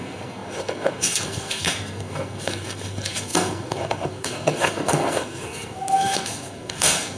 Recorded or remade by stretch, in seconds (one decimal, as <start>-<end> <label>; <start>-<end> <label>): 0.0-7.2 remade